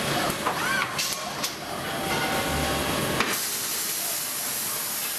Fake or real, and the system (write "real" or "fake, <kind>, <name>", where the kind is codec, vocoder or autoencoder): real